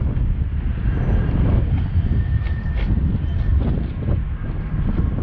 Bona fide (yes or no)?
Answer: yes